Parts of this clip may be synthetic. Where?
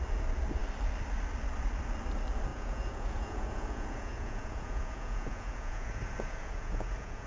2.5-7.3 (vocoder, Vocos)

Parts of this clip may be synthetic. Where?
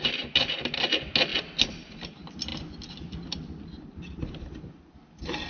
none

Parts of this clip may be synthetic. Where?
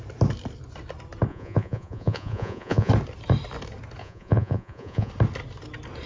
1.3-2.9 (vocoder, Vocos); 4.0-5.1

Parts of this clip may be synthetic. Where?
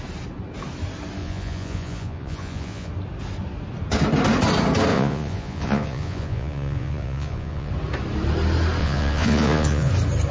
1.2-2.9 (vocoder, Vocos); 4.9-7.7; 8.8-9.9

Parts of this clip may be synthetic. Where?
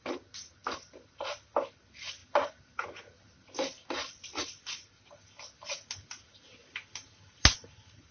none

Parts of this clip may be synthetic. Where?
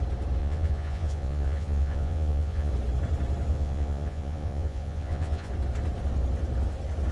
0.4-2.7 (vocoder, Vocos); 3.5-5.5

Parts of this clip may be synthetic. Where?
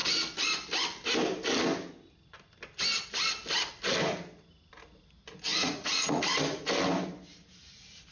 5.5-6.2 (vocoder, Vocos)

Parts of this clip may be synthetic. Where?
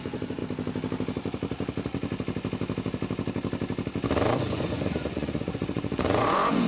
0.0-0.4 (vocoder, Vocos); 4.4-6.7